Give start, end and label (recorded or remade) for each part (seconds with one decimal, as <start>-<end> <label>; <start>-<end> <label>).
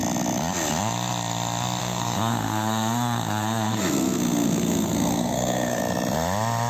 0.0-1.8 recorded; 1.8-5.8 remade; 5.8-6.7 recorded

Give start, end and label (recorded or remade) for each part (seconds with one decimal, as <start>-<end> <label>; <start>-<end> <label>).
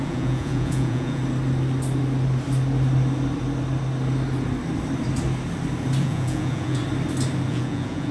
0.0-1.2 remade; 1.2-6.0 recorded; 6.0-6.8 remade; 6.8-7.5 recorded; 7.5-8.1 remade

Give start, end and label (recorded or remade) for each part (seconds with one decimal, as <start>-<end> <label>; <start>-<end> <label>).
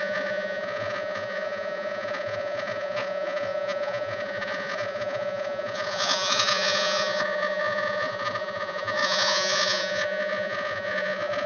0.0-11.5 remade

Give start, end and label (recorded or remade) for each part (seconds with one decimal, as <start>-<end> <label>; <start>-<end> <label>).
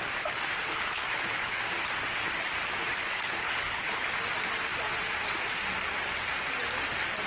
0.0-0.6 recorded; 0.6-1.6 remade; 1.6-3.1 recorded; 3.1-4.1 remade; 4.1-7.3 recorded